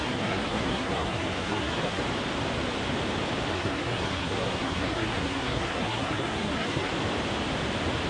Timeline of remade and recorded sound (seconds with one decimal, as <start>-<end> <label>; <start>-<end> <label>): 0.0-2.0 remade; 2.0-3.5 recorded; 3.5-6.9 remade; 6.9-8.1 recorded